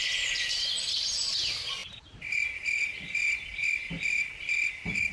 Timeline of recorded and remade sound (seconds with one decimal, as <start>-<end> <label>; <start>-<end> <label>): 0.0-5.1 recorded